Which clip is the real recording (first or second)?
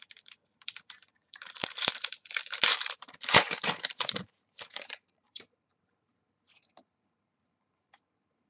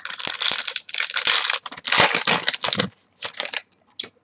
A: second